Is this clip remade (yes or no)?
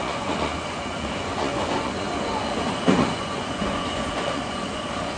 yes